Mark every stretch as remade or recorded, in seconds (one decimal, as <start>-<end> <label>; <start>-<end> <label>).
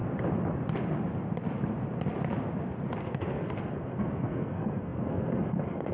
0.0-3.0 recorded; 3.0-5.9 remade